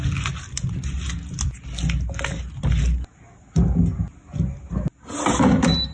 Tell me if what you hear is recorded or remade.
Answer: recorded